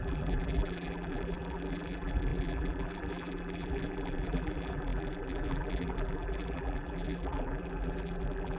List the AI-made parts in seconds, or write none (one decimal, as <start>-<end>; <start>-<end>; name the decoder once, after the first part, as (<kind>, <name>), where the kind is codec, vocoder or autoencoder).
0.0-8.6 (vocoder, BigVGAN v2)

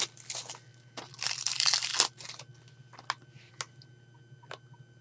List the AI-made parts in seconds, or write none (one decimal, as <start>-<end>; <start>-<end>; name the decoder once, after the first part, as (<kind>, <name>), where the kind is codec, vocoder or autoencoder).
none

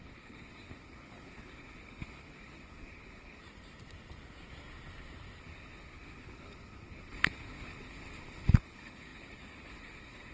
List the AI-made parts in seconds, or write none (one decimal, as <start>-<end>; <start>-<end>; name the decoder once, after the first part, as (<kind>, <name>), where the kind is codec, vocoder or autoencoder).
0.0-3.4 (codec, HILCodec); 5.4-10.3

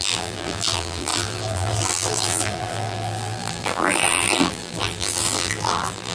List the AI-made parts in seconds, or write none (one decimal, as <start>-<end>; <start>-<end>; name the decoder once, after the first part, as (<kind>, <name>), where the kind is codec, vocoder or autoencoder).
0.0-6.1 (vocoder, BigVGAN v2)

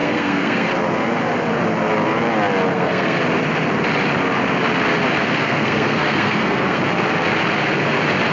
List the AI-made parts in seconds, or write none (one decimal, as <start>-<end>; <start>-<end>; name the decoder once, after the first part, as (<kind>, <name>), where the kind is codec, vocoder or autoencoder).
0.0-0.7 (codec, SNAC); 2.7-3.2; 5.2-6.8

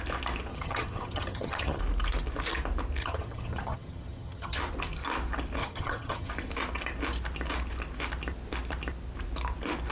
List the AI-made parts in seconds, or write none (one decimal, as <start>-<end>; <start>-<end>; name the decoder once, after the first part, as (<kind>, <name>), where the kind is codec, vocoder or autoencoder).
0.5-1.8 (vocoder, HiFi-GAN); 3.0-4.6; 5.6-6.3

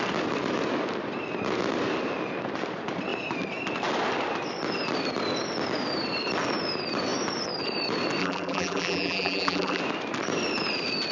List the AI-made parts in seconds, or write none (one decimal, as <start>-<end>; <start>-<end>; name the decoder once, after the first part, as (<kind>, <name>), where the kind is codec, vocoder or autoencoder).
8.2-9.8 (vocoder, BigVGAN v2)